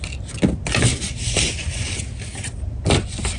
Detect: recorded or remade recorded